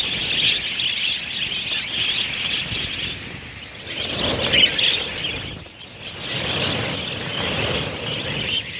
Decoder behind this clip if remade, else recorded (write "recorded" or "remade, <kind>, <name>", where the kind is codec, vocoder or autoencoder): recorded